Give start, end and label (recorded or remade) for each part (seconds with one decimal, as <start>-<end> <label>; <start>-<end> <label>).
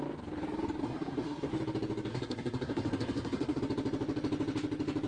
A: 0.0-0.8 recorded; 0.8-1.5 remade; 1.5-2.1 recorded; 2.1-3.6 remade; 3.6-5.1 recorded